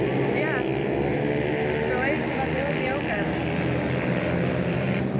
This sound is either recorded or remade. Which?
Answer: recorded